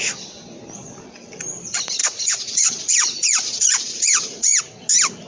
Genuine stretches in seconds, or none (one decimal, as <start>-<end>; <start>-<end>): 0.0-2.0; 4.6-5.3

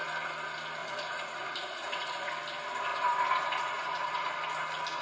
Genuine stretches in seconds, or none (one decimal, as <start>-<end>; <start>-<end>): 0.0-0.8; 2.3-2.9; 4.3-5.0